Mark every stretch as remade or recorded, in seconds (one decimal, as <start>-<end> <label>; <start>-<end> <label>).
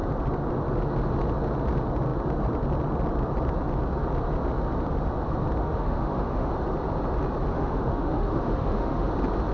0.0-5.6 recorded; 5.6-6.5 remade; 6.5-7.5 recorded; 7.5-9.1 remade; 9.1-9.5 recorded